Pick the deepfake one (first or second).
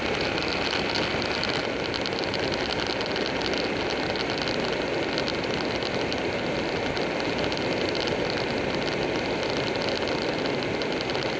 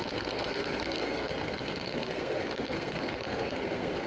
second